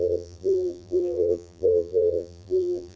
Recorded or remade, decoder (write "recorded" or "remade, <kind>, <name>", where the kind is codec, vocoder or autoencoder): remade, vocoder, BigVGAN v2